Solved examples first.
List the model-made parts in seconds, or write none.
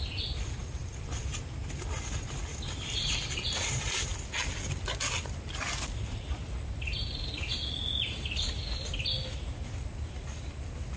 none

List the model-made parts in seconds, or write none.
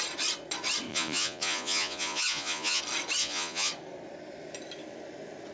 0.9-2.8; 3.2-3.7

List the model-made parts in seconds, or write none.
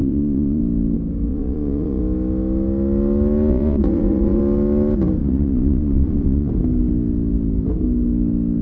0.0-0.6; 1.3-2.0; 3.5-4.4; 5.2-6.5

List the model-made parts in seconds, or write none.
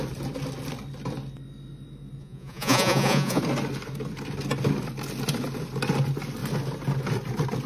2.2-3.4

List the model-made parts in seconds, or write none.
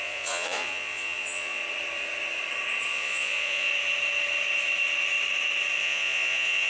0.0-1.6; 2.9-3.7; 5.8-6.7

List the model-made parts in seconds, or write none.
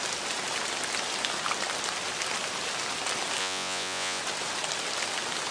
3.4-4.2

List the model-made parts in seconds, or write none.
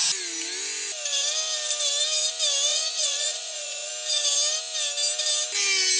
2.7-3.9